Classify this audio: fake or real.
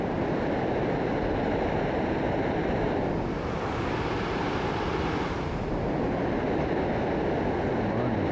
real